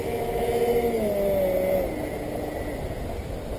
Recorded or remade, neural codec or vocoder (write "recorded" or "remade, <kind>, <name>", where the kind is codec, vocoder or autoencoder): recorded